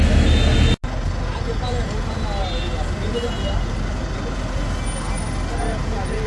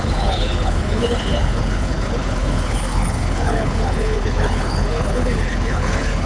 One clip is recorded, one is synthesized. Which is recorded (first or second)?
first